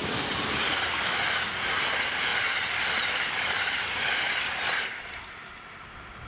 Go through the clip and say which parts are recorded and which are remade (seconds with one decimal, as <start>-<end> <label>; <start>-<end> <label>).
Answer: 0.0-0.6 remade; 0.6-2.3 recorded; 2.3-5.3 remade; 5.3-6.3 recorded